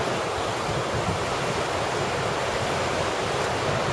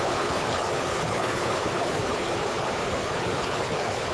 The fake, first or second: second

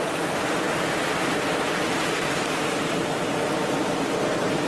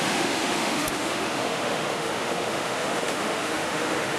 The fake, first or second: second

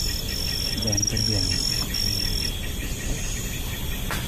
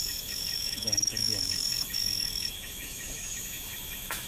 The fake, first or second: second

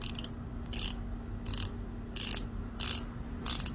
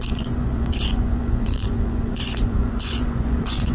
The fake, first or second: second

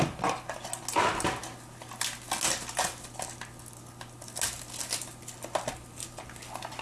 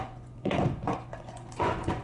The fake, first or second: second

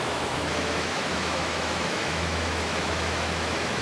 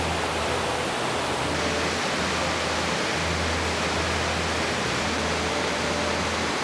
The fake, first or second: first